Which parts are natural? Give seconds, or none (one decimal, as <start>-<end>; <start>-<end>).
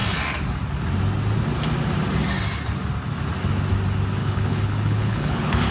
0.0-4.2